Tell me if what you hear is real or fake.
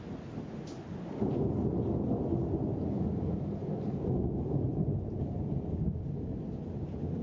real